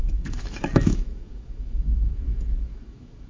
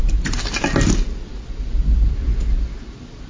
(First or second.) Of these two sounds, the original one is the second